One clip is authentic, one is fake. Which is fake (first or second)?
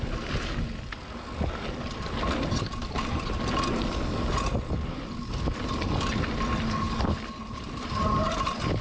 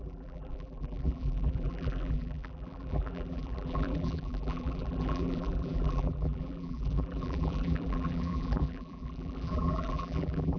second